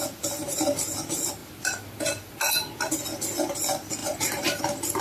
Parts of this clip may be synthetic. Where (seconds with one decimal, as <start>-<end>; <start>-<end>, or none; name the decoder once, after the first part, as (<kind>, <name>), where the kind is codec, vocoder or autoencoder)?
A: 4.0-4.6 (vocoder, BigVGAN v2)

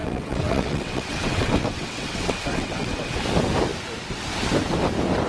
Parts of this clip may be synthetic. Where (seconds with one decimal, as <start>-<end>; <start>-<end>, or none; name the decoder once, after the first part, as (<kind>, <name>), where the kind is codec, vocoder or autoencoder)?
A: 0.0-3.2 (vocoder, WaveNeXt)

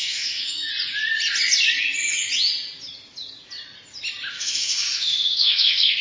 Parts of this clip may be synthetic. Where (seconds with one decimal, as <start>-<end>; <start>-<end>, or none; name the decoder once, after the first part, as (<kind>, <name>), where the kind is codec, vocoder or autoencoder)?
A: 0.0-0.7 (autoencoder, DAC-VAE); 4.3-6.0

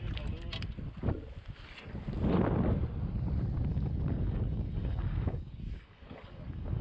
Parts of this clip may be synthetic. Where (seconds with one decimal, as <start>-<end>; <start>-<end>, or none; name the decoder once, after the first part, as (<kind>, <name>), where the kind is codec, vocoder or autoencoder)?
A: 3.7-6.8 (codec, DAC)

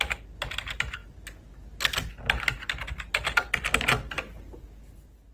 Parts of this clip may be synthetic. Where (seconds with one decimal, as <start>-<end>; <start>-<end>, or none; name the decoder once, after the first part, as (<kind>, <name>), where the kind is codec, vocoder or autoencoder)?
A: none

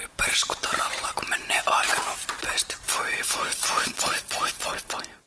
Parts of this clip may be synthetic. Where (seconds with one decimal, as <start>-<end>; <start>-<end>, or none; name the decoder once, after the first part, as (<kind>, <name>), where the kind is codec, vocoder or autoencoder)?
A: 0.0-5.3 (vocoder, BigVGAN v2)